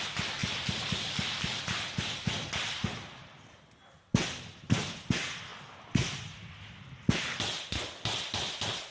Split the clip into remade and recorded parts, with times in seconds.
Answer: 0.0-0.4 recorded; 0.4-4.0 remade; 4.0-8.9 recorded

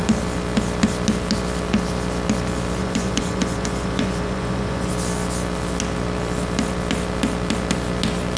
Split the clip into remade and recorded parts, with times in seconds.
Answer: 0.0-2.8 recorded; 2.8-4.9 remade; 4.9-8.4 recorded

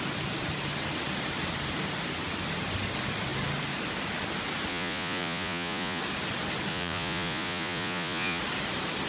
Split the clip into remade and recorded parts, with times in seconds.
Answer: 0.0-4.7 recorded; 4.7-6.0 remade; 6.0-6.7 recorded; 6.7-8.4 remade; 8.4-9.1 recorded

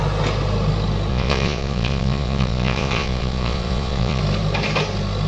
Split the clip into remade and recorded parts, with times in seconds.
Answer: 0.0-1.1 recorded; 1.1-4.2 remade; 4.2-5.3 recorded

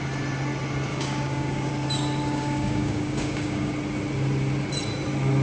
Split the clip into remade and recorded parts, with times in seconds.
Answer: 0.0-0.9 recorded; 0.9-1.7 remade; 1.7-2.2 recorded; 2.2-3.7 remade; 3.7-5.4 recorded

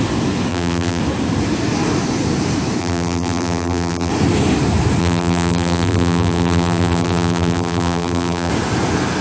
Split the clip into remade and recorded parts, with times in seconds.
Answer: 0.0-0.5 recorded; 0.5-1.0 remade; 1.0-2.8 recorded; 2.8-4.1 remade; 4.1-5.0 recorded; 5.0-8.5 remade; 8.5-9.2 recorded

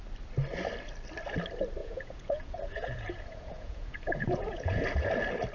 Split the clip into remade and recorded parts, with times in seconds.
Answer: 0.0-1.8 recorded; 1.8-5.1 remade; 5.1-5.5 recorded